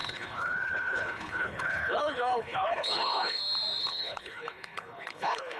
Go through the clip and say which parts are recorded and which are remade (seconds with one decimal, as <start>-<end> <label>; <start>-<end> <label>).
0.0-3.4 remade; 3.4-3.8 recorded; 3.8-5.6 remade